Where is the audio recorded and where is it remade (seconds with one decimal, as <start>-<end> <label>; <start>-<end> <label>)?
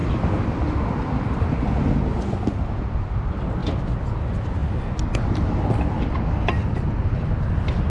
0.0-7.9 recorded